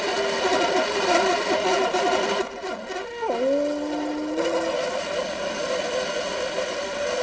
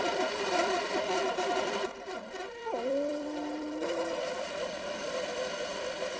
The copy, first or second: second